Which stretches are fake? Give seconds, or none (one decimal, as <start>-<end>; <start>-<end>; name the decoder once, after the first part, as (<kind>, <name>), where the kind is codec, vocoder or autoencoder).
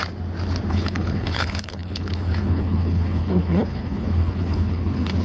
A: 0.7-5.2 (codec, HILCodec)